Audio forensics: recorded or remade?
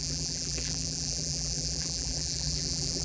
remade